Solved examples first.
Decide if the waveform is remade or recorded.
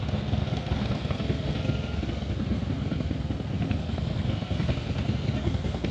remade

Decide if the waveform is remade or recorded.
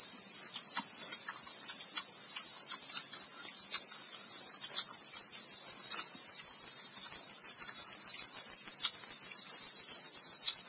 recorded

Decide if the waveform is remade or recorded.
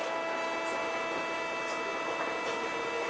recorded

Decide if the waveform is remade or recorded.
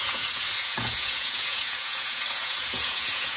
remade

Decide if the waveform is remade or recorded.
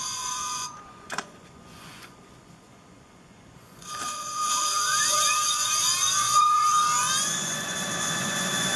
remade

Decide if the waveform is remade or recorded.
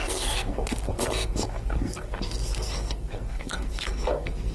remade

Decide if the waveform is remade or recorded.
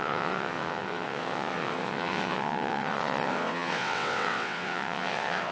remade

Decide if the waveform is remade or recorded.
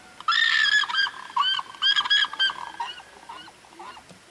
recorded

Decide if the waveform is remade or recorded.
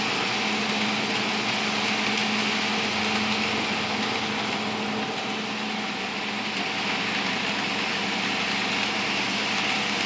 recorded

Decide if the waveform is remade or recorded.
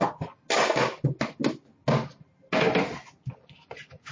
recorded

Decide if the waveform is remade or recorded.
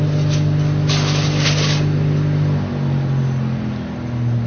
recorded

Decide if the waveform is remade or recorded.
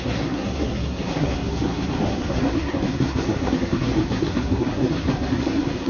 remade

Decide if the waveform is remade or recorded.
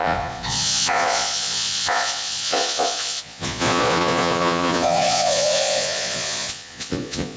remade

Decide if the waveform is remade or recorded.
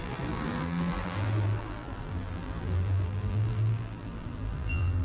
remade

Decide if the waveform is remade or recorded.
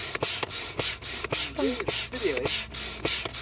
remade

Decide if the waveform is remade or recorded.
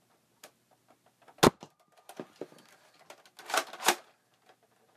recorded